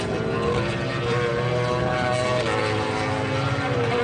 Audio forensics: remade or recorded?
recorded